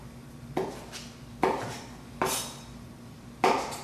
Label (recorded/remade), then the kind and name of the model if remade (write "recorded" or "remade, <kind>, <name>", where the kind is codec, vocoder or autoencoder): recorded